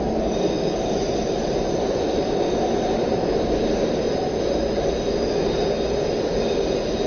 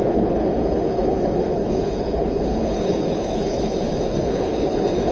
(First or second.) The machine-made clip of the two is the second